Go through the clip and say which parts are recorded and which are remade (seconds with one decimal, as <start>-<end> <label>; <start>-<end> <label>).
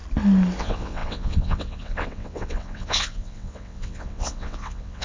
0.0-0.6 recorded; 0.6-5.0 remade